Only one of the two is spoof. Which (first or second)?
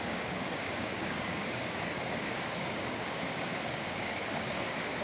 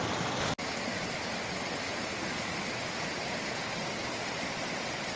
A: first